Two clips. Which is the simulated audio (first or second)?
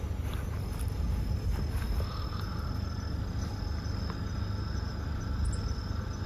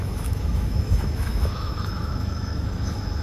second